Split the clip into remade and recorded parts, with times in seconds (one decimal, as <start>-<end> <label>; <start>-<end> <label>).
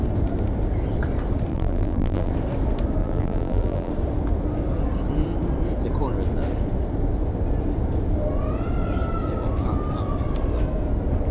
0.0-1.5 recorded; 1.5-2.3 remade; 2.3-3.0 recorded; 3.0-3.9 remade; 3.9-11.3 recorded